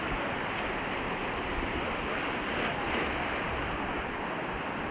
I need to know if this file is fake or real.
real